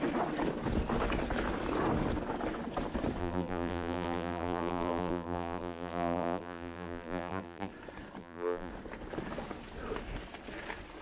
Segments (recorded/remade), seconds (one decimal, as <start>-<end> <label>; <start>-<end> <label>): 0.0-3.2 recorded; 3.2-7.7 remade; 7.7-8.2 recorded; 8.2-8.7 remade; 8.7-11.0 recorded